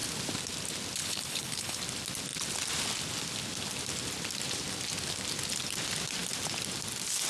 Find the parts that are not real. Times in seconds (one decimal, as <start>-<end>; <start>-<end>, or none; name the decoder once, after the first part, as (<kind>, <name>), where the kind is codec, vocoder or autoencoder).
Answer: 1.0-1.8 (codec, HILCodec)